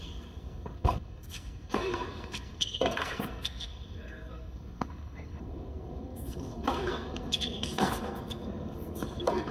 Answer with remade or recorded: remade